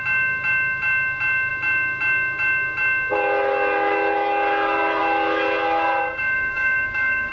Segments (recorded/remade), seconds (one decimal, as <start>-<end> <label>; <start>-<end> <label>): 0.0-6.0 recorded; 6.0-7.3 remade